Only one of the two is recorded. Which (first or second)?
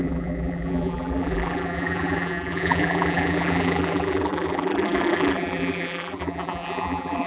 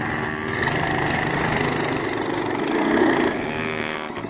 second